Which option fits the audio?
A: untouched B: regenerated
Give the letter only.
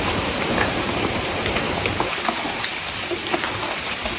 B